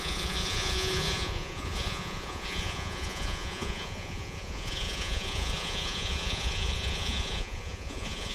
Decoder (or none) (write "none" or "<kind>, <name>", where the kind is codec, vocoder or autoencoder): vocoder, Vocos